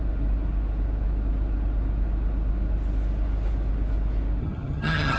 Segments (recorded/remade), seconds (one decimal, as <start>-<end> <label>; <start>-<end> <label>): 0.0-4.4 recorded; 4.4-5.2 remade